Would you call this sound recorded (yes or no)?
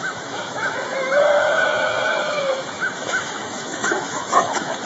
no